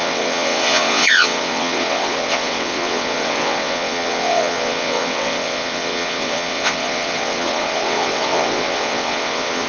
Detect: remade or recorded remade